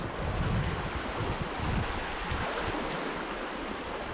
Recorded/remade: recorded